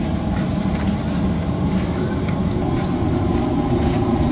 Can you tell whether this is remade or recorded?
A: recorded